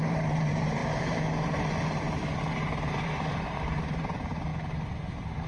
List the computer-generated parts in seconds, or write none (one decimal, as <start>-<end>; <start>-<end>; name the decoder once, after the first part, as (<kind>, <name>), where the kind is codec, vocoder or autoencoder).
0.0-4.5 (vocoder, BigVGAN v2)